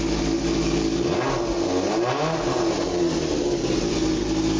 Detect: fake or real real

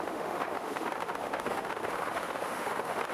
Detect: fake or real fake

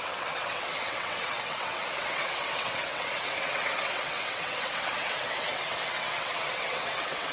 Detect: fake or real fake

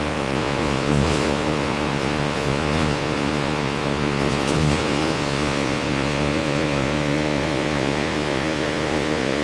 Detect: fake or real fake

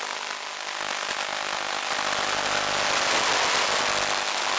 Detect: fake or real real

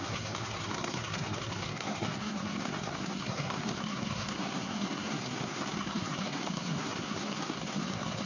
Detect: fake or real fake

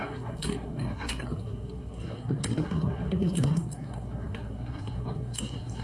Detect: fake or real fake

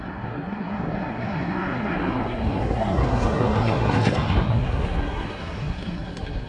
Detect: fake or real fake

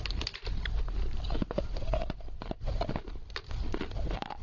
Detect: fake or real real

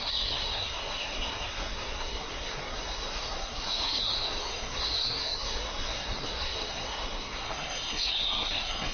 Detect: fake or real fake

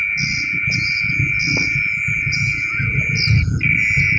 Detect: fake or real real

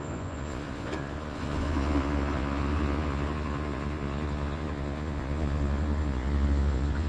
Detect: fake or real fake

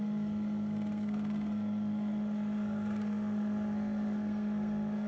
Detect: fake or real fake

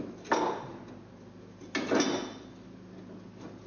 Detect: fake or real real